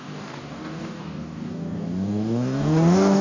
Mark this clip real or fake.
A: fake